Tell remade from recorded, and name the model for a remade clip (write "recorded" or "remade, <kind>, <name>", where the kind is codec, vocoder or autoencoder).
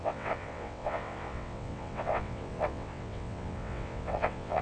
remade, vocoder, WaveNeXt